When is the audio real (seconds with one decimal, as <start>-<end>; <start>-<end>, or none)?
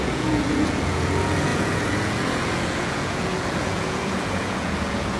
none